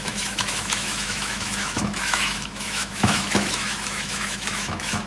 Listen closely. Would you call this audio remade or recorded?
remade